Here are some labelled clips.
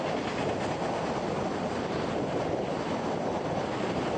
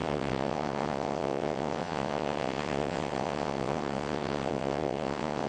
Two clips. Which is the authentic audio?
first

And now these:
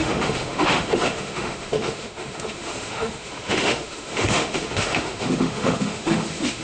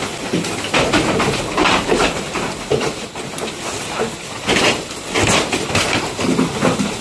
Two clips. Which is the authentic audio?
second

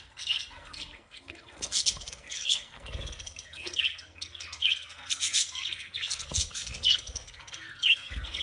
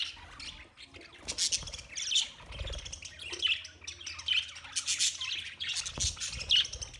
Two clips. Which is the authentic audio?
second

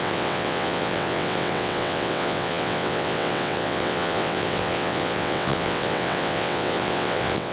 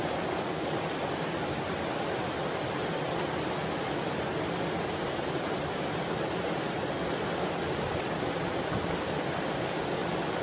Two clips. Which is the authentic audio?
second